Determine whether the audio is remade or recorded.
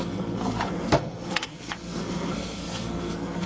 remade